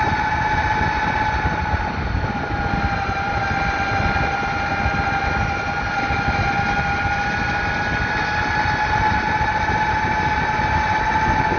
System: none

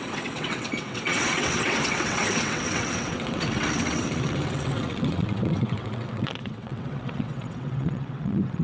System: vocoder, WaveNeXt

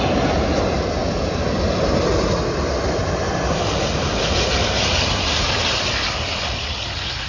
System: none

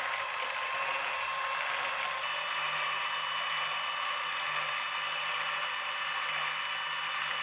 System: none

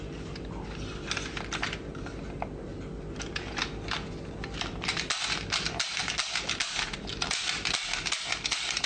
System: none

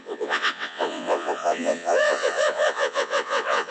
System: vocoder, WaveNeXt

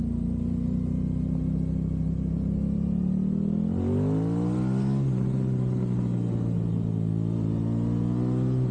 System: none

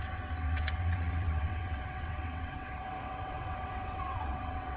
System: vocoder, WaveNeXt